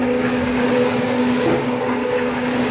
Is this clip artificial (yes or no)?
yes